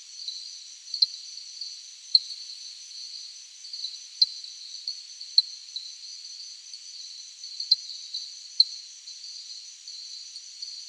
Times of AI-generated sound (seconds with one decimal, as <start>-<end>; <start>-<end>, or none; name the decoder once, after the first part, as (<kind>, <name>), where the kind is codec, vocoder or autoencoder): 0.0-3.8 (vocoder, BigVGAN v2); 4.4-10.9